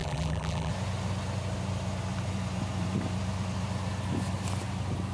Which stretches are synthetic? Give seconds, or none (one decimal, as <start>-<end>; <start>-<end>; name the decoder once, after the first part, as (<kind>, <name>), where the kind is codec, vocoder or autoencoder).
0.0-0.7 (vocoder, BigVGAN v2)